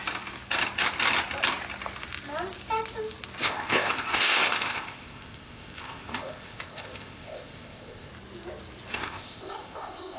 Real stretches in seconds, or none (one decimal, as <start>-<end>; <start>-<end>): 0.0-3.4; 8.1-8.9